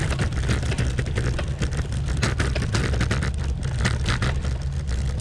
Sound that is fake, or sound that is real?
real